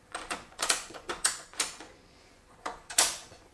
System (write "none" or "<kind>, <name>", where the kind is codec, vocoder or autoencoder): vocoder, Vocos